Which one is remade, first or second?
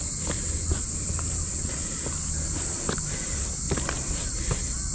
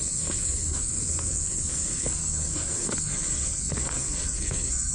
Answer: second